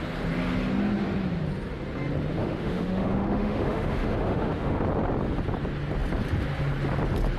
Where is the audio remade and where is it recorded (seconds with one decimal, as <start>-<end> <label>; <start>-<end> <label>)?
0.0-2.4 recorded; 2.4-4.8 remade; 4.8-7.4 recorded